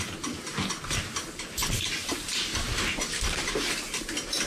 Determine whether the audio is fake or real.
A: real